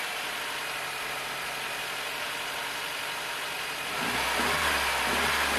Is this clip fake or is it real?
real